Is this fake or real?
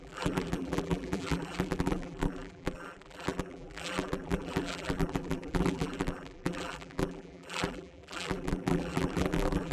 fake